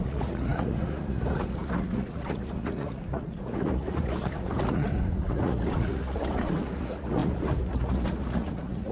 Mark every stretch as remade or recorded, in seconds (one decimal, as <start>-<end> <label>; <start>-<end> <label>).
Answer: 0.0-8.9 remade